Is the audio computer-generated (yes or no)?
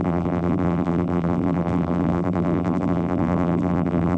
yes